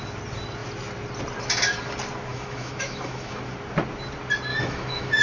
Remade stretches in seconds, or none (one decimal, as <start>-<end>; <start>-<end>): 2.3-3.4; 4.5-5.2